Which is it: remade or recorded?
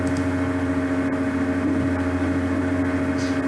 recorded